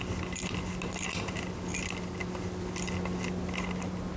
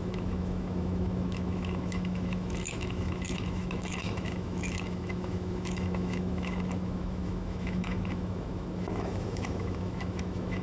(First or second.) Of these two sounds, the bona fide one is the first